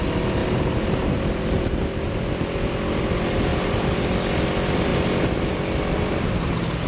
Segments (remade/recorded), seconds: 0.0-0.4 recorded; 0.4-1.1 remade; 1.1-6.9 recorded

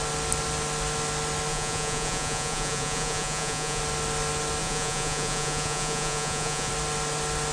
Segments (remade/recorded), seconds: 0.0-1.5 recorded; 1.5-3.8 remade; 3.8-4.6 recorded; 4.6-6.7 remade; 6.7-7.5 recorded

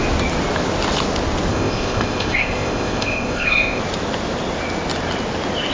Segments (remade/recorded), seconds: 0.0-1.5 recorded; 1.5-3.8 remade; 3.8-5.7 recorded

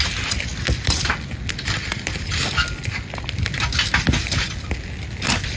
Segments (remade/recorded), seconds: 0.0-5.6 recorded

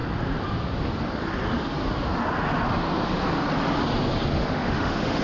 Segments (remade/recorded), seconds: 0.0-4.4 recorded; 4.4-5.2 remade

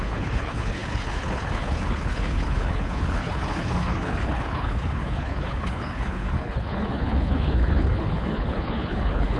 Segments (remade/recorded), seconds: 0.0-9.4 remade

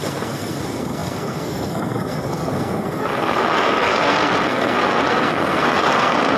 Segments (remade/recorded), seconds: 0.0-6.4 remade